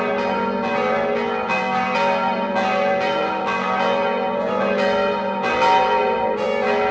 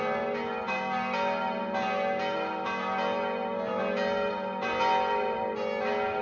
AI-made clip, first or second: first